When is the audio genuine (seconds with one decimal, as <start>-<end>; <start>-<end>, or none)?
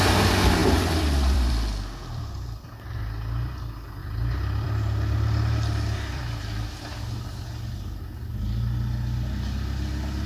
0.0-0.6; 1.5-2.0; 2.7-4.0; 7.0-10.3